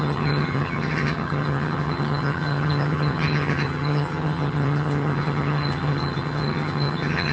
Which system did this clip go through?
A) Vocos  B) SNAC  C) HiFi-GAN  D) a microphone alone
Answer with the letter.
C